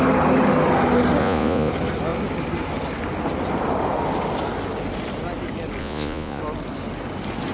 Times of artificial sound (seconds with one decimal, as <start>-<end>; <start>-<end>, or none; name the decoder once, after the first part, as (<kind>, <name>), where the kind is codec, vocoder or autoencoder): 1.2-1.7 (vocoder, Vocos); 5.8-6.4